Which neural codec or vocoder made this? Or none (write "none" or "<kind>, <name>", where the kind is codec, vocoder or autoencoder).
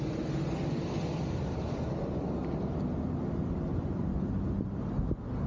none